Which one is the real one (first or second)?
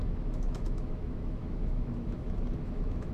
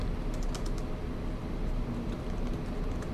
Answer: second